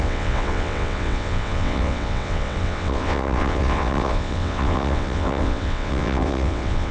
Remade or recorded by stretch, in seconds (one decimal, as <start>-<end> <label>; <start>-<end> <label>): 0.0-6.9 remade